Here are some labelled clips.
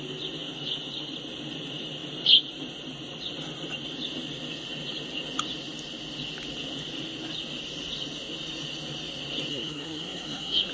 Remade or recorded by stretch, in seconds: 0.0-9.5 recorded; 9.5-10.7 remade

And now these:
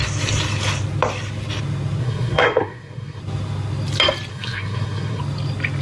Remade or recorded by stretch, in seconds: 0.0-2.0 recorded; 2.0-3.2 remade; 3.2-4.3 recorded; 4.3-5.2 remade; 5.2-5.8 recorded